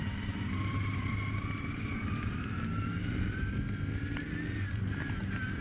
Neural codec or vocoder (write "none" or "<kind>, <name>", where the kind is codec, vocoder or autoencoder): none